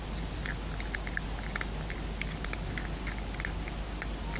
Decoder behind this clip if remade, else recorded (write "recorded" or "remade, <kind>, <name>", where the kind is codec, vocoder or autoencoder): recorded